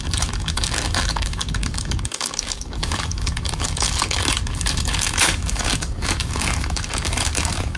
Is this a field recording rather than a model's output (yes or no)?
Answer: no